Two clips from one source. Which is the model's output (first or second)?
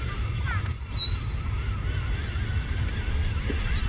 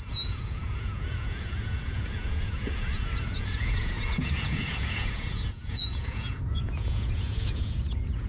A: second